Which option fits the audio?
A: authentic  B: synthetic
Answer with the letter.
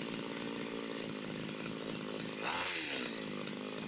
A